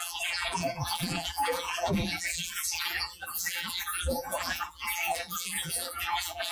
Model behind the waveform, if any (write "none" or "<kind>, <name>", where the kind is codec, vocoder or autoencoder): vocoder, BigVGAN v2